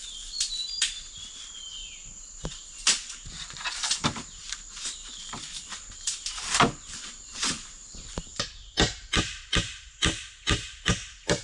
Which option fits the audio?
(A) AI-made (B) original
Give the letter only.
A